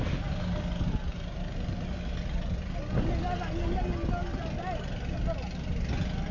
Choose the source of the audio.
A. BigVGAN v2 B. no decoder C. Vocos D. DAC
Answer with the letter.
B